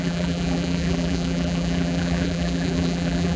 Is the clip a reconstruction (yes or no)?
yes